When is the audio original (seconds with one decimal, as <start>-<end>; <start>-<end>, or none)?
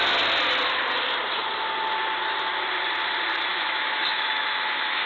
0.0-3.5